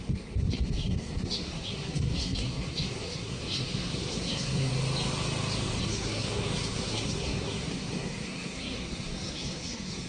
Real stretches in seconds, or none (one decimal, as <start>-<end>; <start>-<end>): 4.7-5.8